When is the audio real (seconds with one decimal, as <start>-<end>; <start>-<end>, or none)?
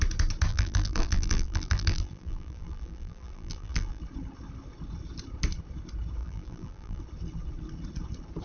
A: 0.0-0.5; 4.0-6.2; 7.0-8.4